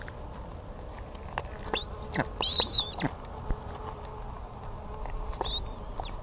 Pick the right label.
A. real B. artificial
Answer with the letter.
A